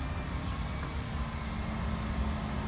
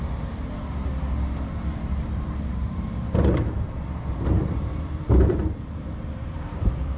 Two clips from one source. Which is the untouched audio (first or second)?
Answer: first